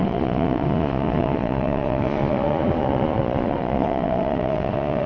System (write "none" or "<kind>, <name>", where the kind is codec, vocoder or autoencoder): vocoder, Vocos